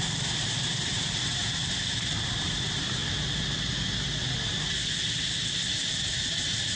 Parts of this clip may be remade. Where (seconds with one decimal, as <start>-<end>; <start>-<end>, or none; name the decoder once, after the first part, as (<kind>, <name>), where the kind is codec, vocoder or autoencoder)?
0.0-1.4 (vocoder, BigVGAN v2); 2.3-3.0; 5.9-6.8

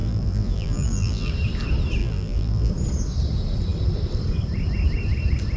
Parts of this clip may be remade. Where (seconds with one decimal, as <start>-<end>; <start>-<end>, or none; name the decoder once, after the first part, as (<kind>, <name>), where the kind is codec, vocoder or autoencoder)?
0.0-1.3 (vocoder, BigVGAN v2); 2.0-2.7

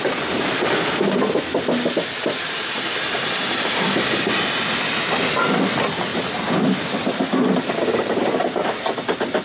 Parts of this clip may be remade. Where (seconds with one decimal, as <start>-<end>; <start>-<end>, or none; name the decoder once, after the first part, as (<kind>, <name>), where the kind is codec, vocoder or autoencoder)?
2.4-4.6 (vocoder, BigVGAN v2); 6.1-7.7; 8.2-8.8

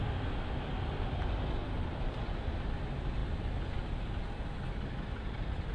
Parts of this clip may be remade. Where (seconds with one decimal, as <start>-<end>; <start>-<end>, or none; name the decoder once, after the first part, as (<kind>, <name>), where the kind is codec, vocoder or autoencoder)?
1.6-2.2 (vocoder, BigVGAN v2)

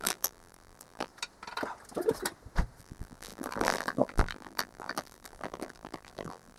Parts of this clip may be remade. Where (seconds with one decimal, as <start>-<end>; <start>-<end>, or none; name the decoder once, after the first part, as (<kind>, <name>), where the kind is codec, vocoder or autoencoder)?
0.0-1.1 (vocoder, BigVGAN v2); 2.8-6.6

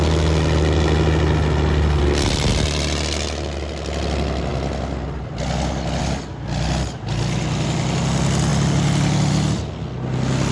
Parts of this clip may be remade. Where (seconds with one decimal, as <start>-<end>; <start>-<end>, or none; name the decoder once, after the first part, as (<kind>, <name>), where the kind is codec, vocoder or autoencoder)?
none

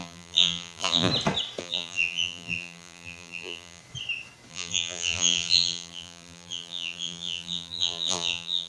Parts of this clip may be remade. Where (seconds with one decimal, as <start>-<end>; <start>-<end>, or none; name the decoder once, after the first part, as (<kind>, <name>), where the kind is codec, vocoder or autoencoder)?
0.0-1.1 (vocoder, BigVGAN v2); 1.6-3.8; 4.5-8.7

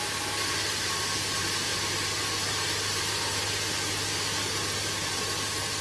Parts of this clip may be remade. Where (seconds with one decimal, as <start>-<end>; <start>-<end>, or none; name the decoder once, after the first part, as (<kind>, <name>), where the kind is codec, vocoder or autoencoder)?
none